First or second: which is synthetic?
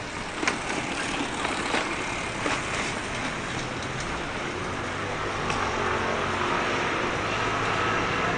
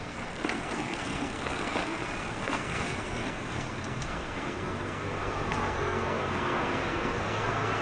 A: second